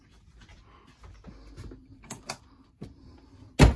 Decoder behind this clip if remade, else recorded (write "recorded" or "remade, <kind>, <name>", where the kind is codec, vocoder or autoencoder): recorded